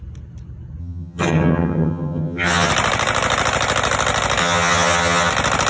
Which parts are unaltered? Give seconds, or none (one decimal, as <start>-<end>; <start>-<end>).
0.0-0.8; 2.7-4.4; 5.3-5.7